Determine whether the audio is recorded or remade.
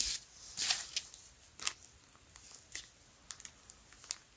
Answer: recorded